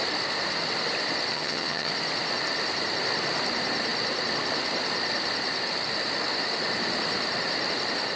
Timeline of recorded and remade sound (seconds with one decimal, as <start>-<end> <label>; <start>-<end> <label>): 0.0-1.3 recorded; 1.3-1.9 remade; 1.9-8.2 recorded